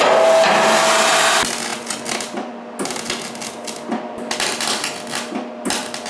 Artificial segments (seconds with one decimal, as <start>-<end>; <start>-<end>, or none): none